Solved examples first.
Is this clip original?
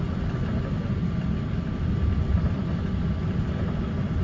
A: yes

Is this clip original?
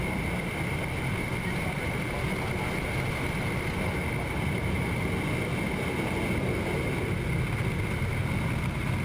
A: yes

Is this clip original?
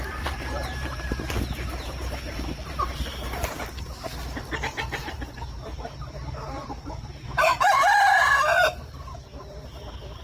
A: no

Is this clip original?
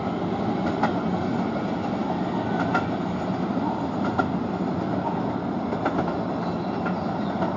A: yes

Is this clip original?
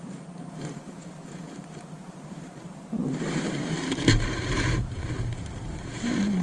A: no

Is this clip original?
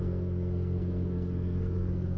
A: no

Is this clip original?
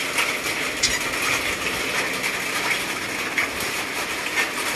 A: yes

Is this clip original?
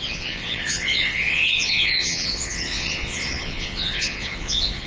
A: no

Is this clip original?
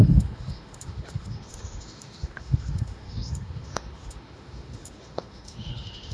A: no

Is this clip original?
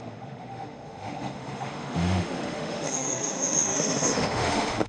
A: no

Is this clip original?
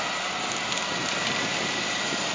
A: yes